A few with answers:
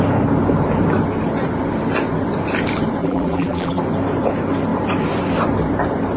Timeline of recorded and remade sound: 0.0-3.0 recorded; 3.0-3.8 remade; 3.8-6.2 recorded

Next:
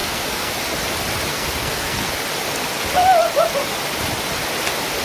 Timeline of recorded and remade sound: 0.0-0.5 remade; 0.5-1.3 recorded; 1.3-2.1 remade; 2.1-5.0 recorded

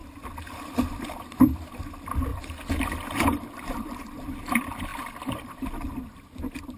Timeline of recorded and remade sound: 0.0-1.8 remade; 1.8-2.3 recorded; 2.3-4.3 remade; 4.3-6.8 recorded

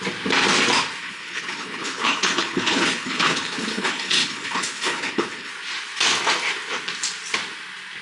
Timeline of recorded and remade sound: 0.0-1.0 recorded; 1.0-5.5 remade; 5.5-8.0 recorded

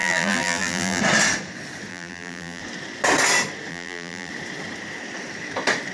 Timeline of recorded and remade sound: 0.0-1.0 remade; 1.0-1.9 recorded; 1.9-2.6 remade; 2.6-3.7 recorded; 3.7-4.3 remade; 4.3-5.9 recorded

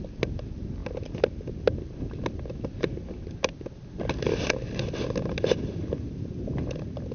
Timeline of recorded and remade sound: 0.0-7.1 recorded